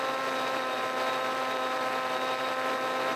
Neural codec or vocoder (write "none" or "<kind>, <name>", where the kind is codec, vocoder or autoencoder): none